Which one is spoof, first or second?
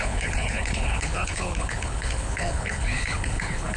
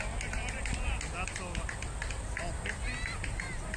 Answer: first